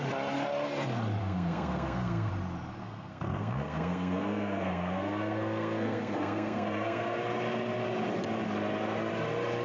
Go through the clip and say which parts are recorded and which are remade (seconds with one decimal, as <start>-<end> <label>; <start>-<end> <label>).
0.0-1.2 recorded; 1.2-2.3 remade; 2.3-2.8 recorded; 2.8-7.2 remade; 7.2-9.6 recorded